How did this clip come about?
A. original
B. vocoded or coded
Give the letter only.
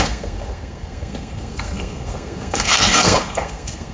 B